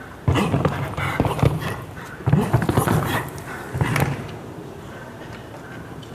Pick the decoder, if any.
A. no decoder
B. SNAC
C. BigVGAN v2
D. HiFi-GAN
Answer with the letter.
C